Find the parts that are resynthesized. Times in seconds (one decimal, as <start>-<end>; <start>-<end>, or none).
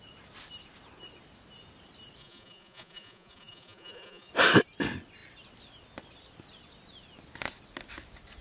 2.2-4.3